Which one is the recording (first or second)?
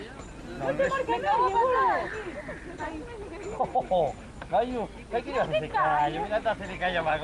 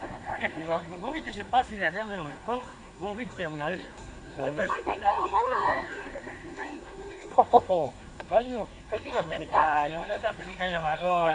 first